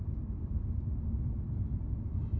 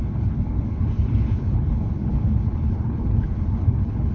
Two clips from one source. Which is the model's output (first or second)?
second